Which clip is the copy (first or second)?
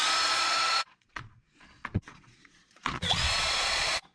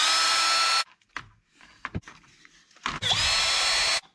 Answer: first